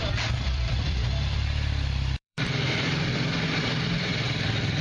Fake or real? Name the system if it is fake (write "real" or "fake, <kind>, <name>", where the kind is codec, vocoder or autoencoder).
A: fake, vocoder, BigVGAN v2